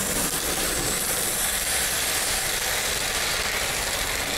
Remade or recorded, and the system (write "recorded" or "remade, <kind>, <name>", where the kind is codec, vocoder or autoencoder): recorded